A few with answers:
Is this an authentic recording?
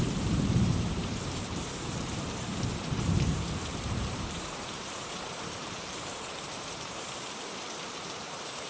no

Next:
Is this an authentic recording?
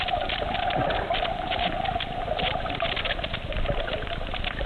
yes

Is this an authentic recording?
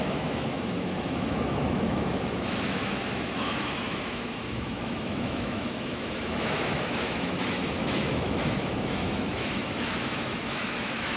no